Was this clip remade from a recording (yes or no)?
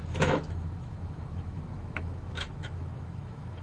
yes